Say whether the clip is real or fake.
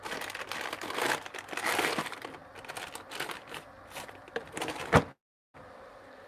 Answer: real